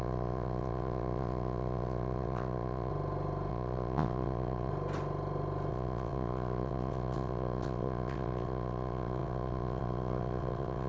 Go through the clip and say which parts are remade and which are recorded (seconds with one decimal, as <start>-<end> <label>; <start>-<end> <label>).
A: 0.0-2.9 remade; 2.9-3.5 recorded; 3.5-4.7 remade; 4.7-5.7 recorded; 5.7-10.9 remade